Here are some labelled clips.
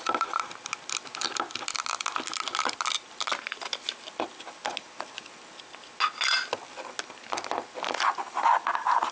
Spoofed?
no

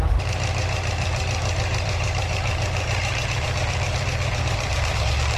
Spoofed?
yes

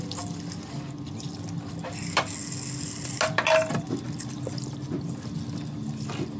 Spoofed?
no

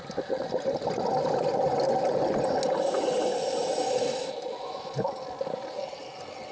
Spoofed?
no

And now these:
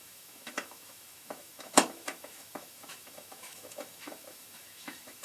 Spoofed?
yes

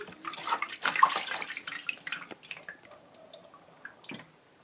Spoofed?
yes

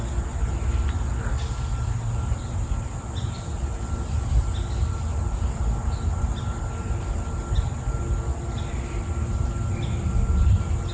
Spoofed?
no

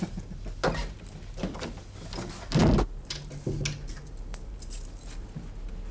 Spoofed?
no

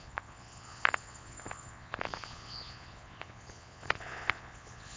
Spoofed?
yes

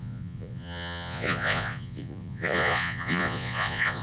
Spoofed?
yes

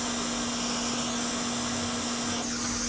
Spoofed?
no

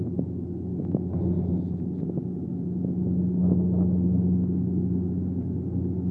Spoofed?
no